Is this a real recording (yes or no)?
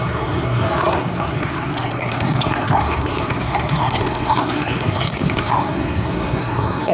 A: no